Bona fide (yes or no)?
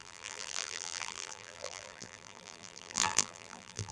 no